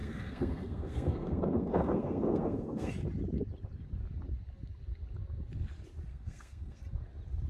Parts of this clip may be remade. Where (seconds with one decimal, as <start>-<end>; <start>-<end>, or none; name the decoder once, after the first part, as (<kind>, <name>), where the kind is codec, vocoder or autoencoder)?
0.0-2.9 (codec, SNAC); 6.1-6.8